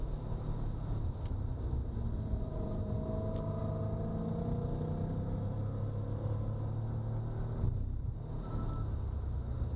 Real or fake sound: real